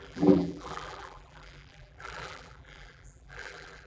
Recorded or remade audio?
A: remade